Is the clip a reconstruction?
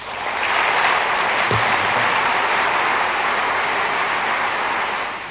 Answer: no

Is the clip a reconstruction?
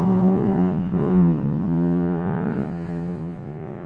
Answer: yes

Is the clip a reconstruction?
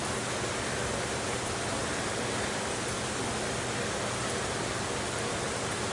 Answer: no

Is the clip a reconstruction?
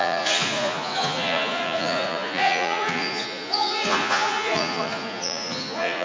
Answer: yes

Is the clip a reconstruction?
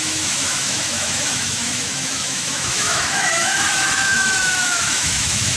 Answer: yes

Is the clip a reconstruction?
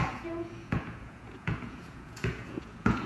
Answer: yes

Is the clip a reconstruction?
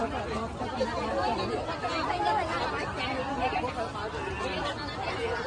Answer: no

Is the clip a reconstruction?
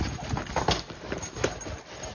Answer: no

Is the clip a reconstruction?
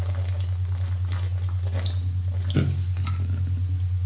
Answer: no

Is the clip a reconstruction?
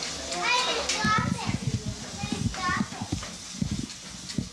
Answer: no